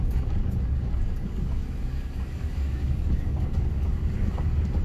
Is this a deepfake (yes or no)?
yes